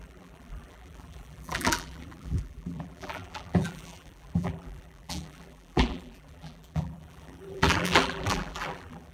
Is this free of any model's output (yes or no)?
no